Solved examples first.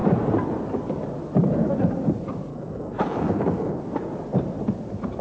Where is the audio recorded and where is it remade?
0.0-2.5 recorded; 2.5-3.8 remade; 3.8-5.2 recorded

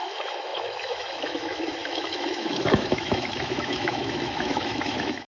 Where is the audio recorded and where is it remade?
0.0-5.3 remade

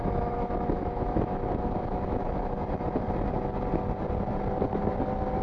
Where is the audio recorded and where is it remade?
0.0-2.5 remade; 2.5-5.4 recorded